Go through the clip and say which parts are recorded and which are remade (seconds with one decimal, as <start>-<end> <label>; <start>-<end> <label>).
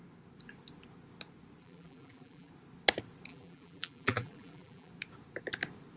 0.0-1.6 recorded; 1.6-2.5 remade; 2.5-3.3 recorded; 3.3-4.9 remade; 4.9-6.0 recorded